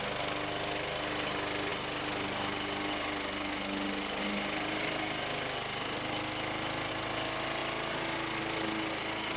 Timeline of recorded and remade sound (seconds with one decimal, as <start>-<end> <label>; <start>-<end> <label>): 0.0-9.4 recorded

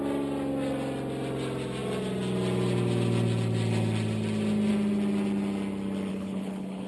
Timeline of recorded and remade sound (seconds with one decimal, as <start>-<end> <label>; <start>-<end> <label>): 0.0-6.1 recorded; 6.1-6.9 remade